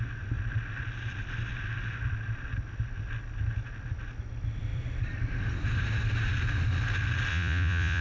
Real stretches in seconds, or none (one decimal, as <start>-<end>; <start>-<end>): 0.0-7.3